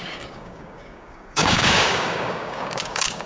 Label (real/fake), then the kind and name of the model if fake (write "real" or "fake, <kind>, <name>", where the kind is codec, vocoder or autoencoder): fake, codec, DAC